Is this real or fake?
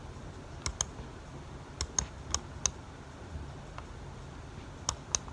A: real